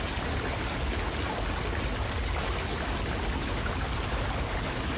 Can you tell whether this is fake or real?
real